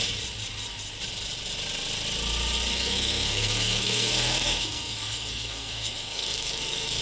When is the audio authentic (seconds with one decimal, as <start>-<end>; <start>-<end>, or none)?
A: 0.0-2.7